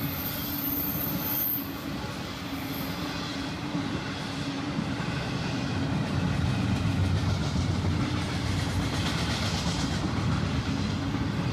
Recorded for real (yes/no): yes